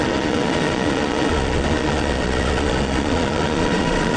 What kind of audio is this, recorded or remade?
remade